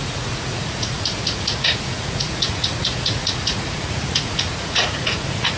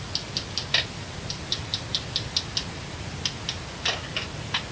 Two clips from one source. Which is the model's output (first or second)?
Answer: first